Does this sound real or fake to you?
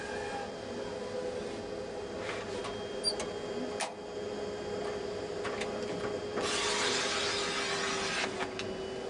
real